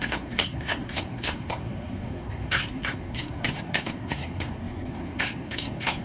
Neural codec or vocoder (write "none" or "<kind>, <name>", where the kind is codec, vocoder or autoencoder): codec, SNAC